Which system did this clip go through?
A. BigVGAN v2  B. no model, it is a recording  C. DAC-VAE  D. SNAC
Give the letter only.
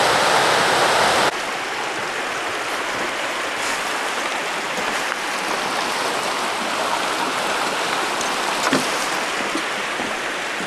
B